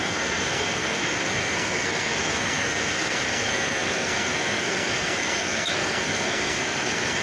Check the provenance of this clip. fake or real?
fake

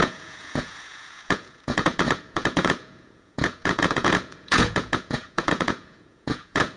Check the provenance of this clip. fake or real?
fake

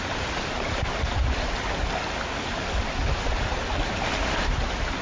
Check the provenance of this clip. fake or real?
real